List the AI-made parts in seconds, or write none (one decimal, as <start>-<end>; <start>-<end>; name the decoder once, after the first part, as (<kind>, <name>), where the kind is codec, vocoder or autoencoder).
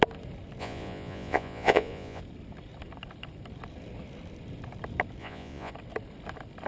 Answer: 0.6-2.2 (vocoder, Vocos); 5.2-5.7